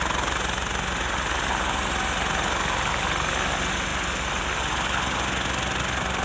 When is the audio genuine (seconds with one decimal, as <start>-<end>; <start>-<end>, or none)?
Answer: 0.0-6.2